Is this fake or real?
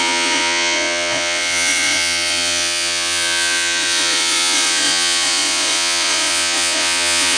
fake